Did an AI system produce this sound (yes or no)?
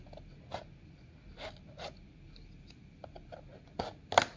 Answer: no